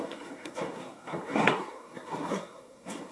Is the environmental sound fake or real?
fake